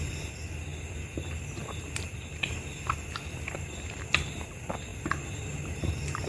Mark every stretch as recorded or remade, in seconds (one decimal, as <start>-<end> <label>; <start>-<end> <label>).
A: 0.0-6.3 recorded